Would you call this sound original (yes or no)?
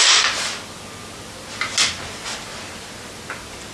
yes